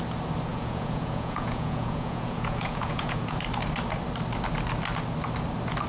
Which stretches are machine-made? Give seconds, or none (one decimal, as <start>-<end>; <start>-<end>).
0.5-3.4